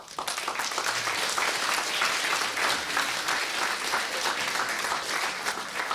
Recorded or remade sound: recorded